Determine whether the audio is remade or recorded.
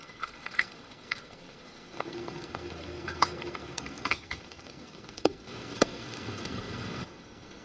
remade